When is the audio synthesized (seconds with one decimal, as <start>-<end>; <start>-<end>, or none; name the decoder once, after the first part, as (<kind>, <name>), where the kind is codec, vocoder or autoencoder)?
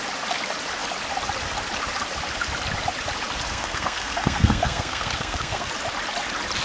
3.5-5.7 (codec, SNAC)